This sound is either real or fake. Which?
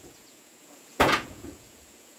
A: fake